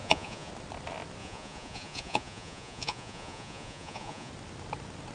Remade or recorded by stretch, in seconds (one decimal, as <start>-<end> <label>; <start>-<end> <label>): 0.0-0.5 remade; 0.5-1.2 recorded; 1.2-4.3 remade; 4.3-5.1 recorded